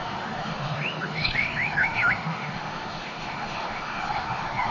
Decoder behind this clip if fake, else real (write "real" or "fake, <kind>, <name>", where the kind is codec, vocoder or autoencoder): fake, autoencoder, DAC-VAE